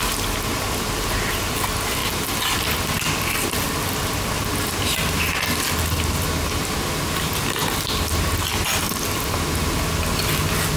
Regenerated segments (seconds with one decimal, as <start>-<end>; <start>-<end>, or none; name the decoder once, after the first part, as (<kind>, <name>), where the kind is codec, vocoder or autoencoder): none